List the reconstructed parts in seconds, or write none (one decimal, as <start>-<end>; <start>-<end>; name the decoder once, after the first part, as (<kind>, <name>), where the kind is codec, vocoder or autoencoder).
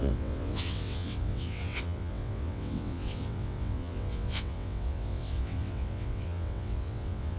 0.0-7.4 (vocoder, WaveNeXt)